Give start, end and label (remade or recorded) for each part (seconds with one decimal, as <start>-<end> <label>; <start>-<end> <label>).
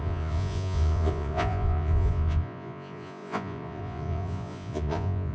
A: 0.0-5.3 remade